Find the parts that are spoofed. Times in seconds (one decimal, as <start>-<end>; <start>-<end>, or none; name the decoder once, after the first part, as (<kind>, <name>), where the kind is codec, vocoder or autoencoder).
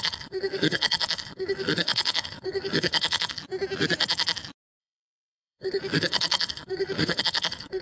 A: 0.0-3.4 (codec, SNAC); 4.8-7.8